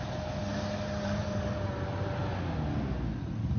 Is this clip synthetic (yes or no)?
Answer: no